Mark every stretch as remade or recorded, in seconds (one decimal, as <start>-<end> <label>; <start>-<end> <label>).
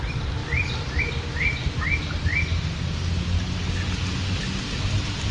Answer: 0.0-5.3 recorded